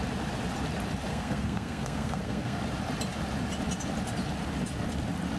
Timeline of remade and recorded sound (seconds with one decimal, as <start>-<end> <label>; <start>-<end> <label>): 0.0-1.1 recorded; 1.1-2.6 remade; 2.6-5.4 recorded